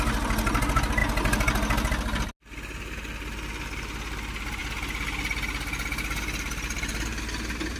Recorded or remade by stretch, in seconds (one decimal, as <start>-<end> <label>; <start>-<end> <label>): 0.0-7.8 recorded